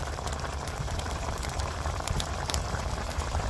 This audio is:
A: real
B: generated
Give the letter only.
B